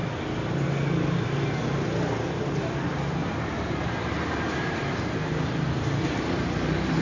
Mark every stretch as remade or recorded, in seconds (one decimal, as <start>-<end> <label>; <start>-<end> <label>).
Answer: 0.0-3.2 recorded; 3.2-5.1 remade; 5.1-7.0 recorded